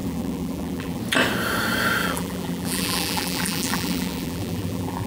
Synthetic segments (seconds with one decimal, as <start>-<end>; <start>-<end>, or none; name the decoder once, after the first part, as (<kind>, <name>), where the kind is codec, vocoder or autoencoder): 0.0-1.0 (vocoder, BigVGAN v2); 2.0-5.1